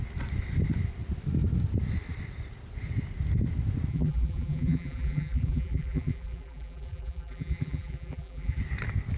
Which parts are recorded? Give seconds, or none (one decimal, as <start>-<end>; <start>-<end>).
0.0-3.9; 8.6-9.2